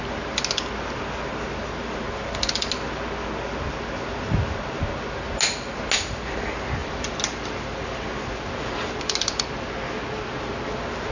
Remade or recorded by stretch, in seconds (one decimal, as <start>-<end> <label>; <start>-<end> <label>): 0.0-11.1 recorded